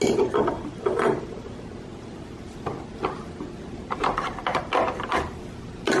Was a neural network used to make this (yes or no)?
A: no